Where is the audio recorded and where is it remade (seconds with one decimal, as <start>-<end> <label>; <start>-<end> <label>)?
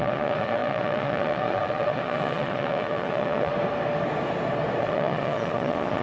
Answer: 0.0-3.5 remade; 3.5-4.8 recorded; 4.8-6.0 remade